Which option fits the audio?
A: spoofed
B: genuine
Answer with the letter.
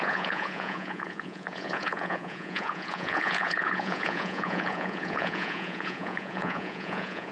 A